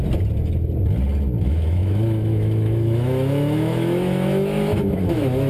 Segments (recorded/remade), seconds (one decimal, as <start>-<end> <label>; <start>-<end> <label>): 0.0-1.4 recorded; 1.4-5.5 remade